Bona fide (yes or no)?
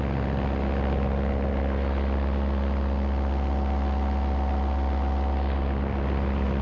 yes